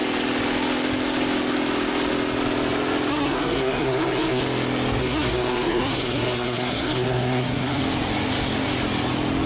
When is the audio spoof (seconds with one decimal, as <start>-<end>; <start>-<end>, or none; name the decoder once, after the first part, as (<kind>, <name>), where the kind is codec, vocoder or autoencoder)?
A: 3.1-4.4 (codec, SNAC); 5.0-7.8